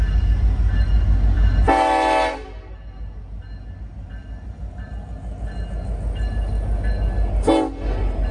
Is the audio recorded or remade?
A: recorded